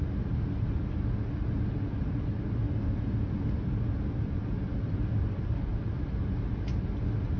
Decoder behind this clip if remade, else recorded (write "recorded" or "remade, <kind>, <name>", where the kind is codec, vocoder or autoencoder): recorded